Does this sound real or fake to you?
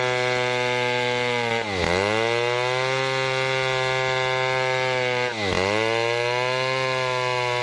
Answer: real